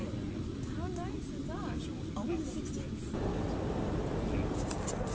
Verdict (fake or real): real